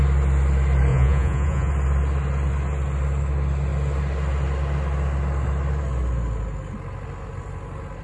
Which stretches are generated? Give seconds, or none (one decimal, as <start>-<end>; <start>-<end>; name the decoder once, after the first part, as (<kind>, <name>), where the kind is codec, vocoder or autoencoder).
0.9-1.7 (vocoder, Vocos)